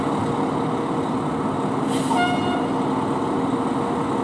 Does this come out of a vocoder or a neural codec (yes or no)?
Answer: no